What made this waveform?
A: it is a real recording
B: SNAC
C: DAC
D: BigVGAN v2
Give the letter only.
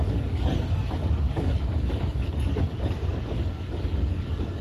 C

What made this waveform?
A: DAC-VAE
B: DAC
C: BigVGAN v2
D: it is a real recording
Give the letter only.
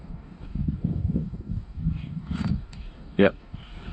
B